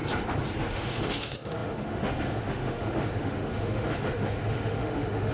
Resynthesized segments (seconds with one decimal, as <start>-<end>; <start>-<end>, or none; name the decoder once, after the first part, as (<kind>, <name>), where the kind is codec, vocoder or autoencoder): 0.7-5.3 (autoencoder, DAC-VAE)